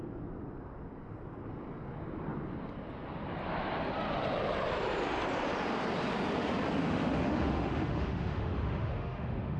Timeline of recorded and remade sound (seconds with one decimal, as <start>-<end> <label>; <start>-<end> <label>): 0.0-6.8 recorded; 6.8-9.6 remade